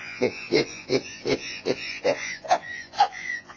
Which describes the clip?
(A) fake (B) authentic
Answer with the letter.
A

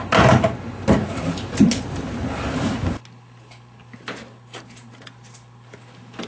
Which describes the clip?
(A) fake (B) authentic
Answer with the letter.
B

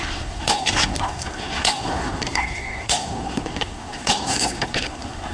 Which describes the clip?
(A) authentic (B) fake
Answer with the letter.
B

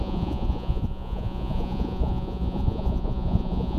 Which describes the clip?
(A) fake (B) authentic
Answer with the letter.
A